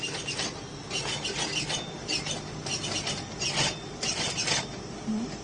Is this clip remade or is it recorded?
recorded